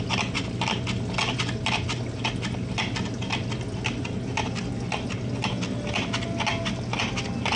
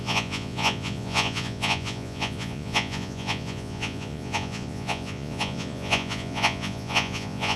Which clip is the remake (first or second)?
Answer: second